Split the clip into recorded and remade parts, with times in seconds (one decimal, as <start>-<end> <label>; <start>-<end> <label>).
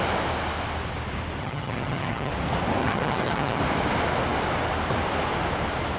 0.0-1.4 recorded; 1.4-2.3 remade; 2.3-2.8 recorded; 2.8-3.6 remade; 3.6-6.0 recorded